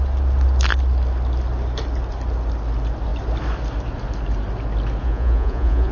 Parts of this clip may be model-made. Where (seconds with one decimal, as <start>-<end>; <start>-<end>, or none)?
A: 5.0-5.9